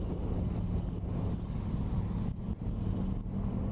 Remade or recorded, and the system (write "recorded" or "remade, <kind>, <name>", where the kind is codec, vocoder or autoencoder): recorded